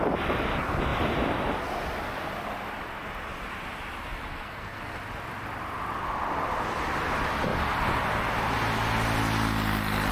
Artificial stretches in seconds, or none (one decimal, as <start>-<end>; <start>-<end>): 4.3-5.0